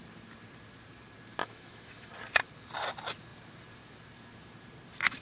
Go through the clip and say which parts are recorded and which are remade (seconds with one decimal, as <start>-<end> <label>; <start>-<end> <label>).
0.0-1.4 recorded; 1.4-2.1 remade; 2.1-5.2 recorded